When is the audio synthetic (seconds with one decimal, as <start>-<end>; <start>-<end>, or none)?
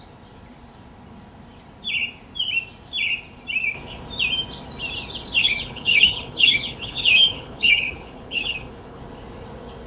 5.4-9.0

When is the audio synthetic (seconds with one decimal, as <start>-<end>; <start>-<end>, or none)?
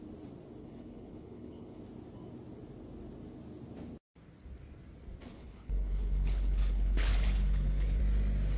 0.6-1.8; 5.3-8.0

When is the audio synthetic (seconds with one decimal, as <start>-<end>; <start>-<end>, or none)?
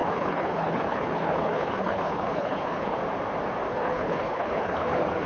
0.0-3.0; 3.7-5.3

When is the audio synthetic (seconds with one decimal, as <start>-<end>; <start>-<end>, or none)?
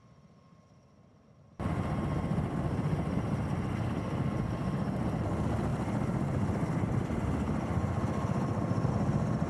none